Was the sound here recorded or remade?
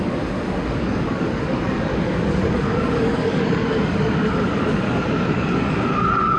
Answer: remade